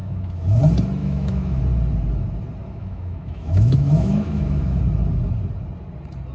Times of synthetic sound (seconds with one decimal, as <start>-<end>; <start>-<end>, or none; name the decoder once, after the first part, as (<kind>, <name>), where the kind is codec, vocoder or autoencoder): 0.0-0.6 (autoencoder, DAC-VAE); 1.0-1.6; 2.6-4.8